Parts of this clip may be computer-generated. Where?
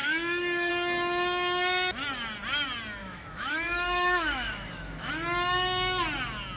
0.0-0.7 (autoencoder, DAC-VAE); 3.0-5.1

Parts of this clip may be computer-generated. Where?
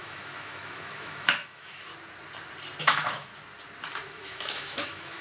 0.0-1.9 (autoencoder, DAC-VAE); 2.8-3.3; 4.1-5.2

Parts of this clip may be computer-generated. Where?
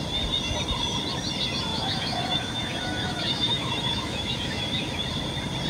1.7-5.0 (autoencoder, DAC-VAE)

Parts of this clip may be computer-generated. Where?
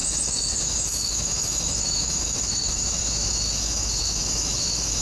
0.0-5.0 (autoencoder, DAC-VAE)